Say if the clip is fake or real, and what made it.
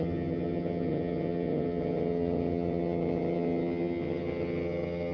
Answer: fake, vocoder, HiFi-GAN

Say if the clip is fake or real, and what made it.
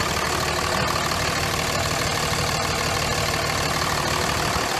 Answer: real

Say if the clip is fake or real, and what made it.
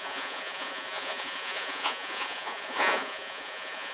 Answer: fake, vocoder, Vocos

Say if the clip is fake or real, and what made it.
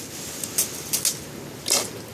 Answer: real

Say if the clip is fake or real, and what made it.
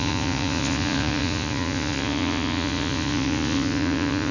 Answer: fake, vocoder, Vocos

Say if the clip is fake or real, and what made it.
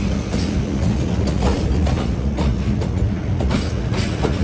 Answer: fake, vocoder, Vocos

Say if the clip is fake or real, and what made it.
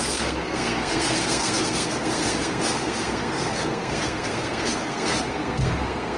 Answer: fake, codec, SNAC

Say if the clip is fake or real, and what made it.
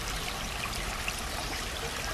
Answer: real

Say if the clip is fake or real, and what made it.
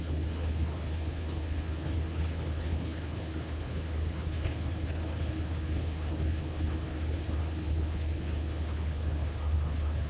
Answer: fake, codec, HILCodec